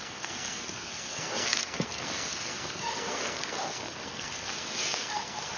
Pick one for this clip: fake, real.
fake